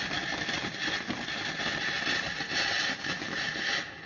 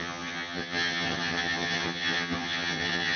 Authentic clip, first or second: first